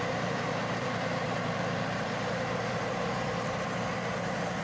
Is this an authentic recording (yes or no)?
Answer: no